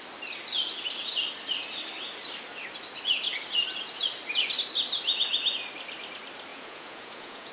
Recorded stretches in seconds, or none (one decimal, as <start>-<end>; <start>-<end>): 0.0-6.5